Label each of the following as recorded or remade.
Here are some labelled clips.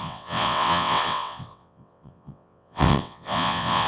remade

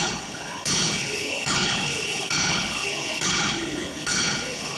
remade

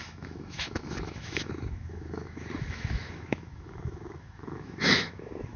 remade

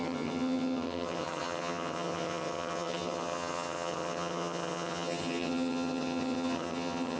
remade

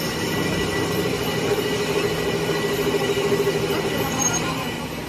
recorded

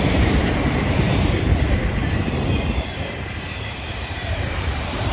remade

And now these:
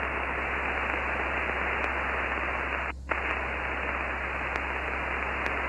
recorded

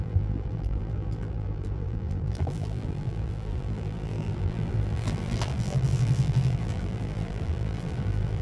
remade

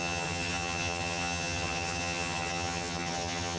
remade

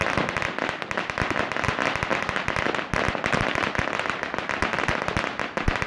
recorded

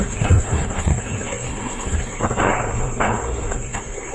remade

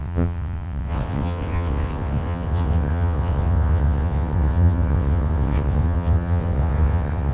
remade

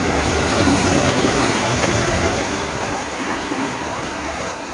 remade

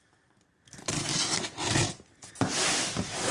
recorded